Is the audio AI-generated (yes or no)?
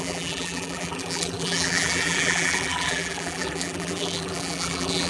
yes